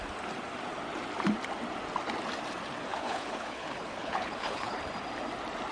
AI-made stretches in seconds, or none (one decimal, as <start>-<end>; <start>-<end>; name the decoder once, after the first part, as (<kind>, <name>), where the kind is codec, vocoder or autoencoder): 2.9-4.8 (codec, HILCodec)